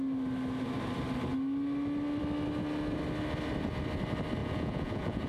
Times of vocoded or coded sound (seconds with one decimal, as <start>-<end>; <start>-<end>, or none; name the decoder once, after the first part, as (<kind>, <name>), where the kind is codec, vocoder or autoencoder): 4.4-5.3 (vocoder, Vocos)